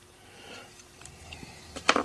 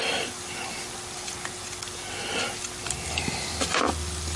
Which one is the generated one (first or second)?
first